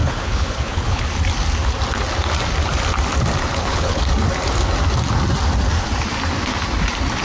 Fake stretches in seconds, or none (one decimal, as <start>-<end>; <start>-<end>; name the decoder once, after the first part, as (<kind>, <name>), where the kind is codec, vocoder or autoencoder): 0.0-1.0 (codec, HILCodec); 3.5-4.0